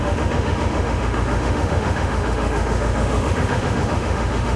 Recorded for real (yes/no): no